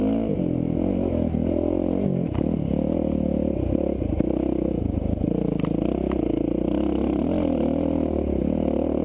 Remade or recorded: recorded